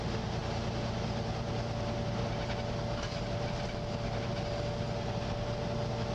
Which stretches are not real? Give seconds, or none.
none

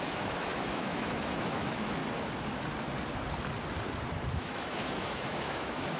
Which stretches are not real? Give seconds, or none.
0.0-2.0 (autoencoder, DAC-VAE); 4.3-6.0

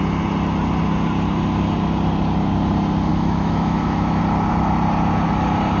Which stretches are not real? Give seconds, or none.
3.1-4.2 (autoencoder, DAC-VAE)

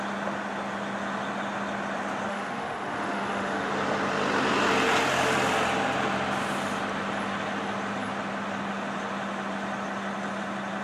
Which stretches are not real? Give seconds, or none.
2.3-3.7 (autoencoder, DAC-VAE)

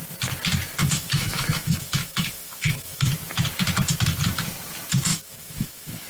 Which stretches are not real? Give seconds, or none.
0.8-3.0 (autoencoder, DAC-VAE); 5.1-6.1